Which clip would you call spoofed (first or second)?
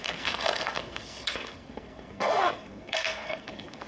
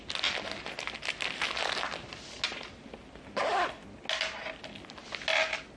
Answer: first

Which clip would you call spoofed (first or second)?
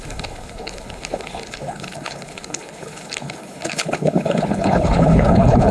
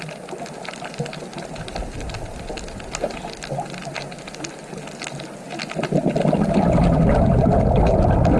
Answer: first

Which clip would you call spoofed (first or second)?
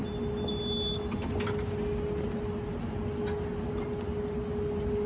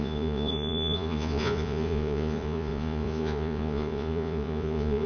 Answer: second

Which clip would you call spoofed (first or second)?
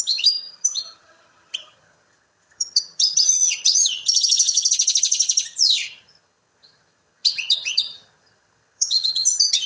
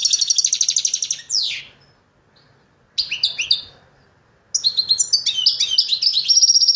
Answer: first